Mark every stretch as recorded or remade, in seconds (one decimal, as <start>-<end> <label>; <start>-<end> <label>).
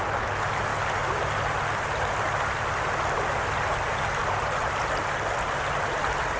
0.0-6.4 recorded